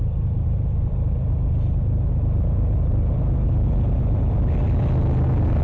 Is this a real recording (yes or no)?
yes